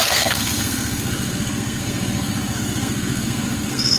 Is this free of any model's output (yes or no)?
no